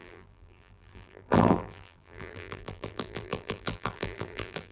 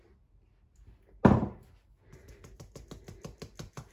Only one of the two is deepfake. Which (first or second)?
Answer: first